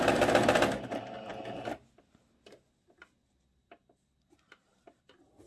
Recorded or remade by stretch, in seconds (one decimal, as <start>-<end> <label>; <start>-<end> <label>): 0.0-5.5 recorded